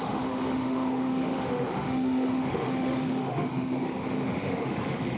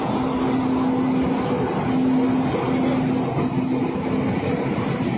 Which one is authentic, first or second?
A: second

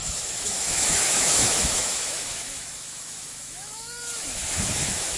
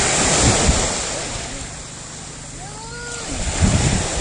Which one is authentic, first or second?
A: second